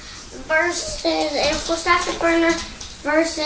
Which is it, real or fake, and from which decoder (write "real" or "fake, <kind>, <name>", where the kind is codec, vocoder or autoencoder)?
real